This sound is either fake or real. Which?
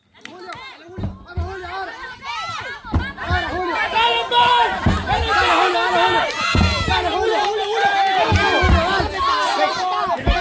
real